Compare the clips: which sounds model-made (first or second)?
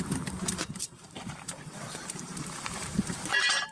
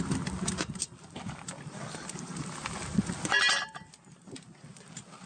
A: first